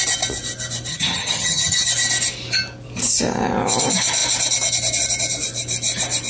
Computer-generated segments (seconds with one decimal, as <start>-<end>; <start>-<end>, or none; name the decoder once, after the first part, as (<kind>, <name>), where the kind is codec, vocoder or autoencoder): 0.9-1.9 (vocoder, HiFi-GAN)